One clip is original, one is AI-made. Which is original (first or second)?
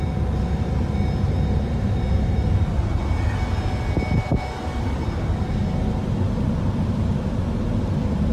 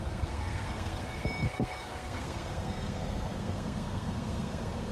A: first